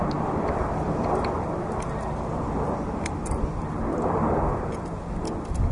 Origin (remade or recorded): recorded